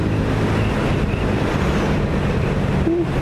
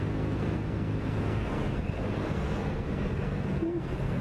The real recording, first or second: first